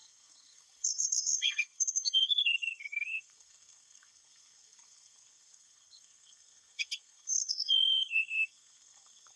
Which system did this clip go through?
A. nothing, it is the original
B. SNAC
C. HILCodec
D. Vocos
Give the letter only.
B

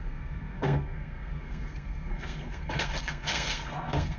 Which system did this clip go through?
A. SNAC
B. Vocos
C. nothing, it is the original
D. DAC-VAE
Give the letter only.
A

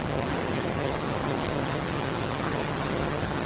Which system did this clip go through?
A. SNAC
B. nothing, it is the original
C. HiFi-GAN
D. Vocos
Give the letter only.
C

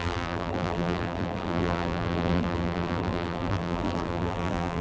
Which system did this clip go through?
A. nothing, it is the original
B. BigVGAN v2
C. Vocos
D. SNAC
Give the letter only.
B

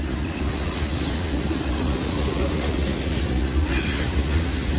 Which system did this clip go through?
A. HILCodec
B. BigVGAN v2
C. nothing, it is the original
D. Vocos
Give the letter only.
D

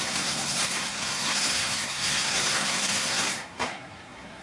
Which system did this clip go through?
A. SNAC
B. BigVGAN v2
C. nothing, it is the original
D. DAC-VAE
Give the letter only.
A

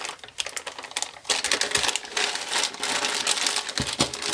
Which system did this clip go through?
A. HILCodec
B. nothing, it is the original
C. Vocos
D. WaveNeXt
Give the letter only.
B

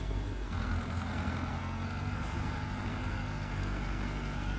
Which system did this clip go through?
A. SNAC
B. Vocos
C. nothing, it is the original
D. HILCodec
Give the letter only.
A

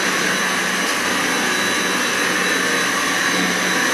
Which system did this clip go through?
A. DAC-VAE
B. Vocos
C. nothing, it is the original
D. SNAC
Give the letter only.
C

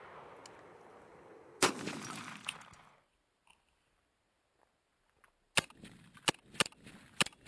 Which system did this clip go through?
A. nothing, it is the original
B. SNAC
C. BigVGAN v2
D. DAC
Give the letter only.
A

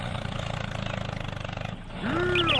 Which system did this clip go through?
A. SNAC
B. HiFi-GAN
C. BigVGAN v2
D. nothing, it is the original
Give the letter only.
D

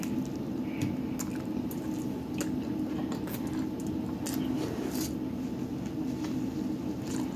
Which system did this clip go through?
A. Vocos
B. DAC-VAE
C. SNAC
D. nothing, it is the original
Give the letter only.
D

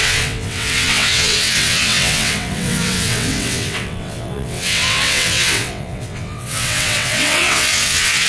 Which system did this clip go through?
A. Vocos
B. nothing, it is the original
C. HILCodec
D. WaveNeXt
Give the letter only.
D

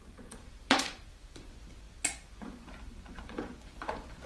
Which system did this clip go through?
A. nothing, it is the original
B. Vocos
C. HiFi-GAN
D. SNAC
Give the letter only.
B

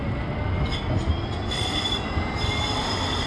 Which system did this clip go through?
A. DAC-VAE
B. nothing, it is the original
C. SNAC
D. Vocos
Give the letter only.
B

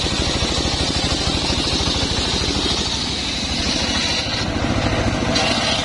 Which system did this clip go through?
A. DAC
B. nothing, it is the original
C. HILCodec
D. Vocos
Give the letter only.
B